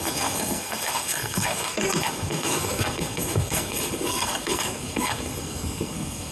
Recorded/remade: remade